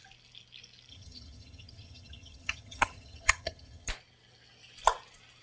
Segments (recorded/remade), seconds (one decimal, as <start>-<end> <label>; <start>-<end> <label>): 0.0-0.9 recorded; 0.9-3.9 remade; 3.9-5.4 recorded